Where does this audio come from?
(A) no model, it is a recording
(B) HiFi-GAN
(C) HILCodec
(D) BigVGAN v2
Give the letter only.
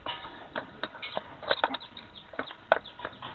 A